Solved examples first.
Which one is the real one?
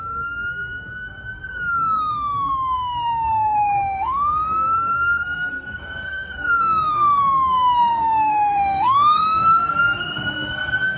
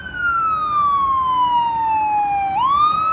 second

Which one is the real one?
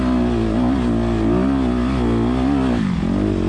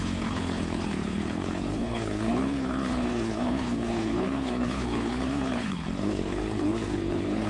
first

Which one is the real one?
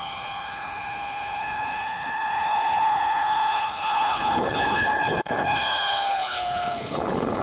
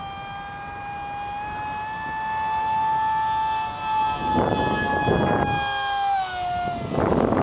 second